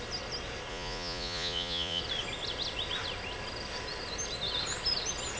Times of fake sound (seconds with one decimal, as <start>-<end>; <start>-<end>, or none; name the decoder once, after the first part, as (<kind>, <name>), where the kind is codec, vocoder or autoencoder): 0.7-2.0 (vocoder, Vocos)